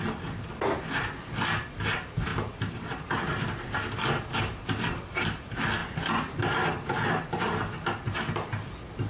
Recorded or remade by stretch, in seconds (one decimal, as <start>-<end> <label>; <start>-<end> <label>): 0.0-9.1 recorded